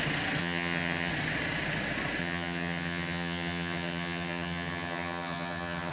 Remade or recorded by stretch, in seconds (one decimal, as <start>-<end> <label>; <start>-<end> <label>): 0.0-0.4 recorded; 0.4-1.1 remade; 1.1-2.2 recorded; 2.2-5.9 remade